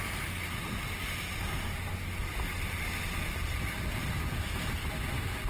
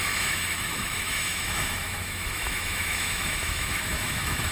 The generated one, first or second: second